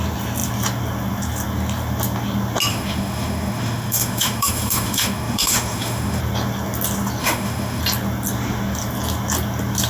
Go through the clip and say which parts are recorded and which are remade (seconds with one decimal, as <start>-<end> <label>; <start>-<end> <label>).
0.0-2.7 recorded; 2.7-6.2 remade; 6.2-7.2 recorded; 7.2-7.8 remade; 7.8-9.9 recorded